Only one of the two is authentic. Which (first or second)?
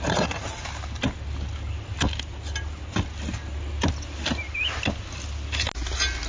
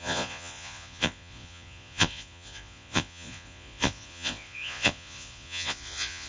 first